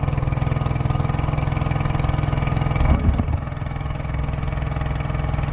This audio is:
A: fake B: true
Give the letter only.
B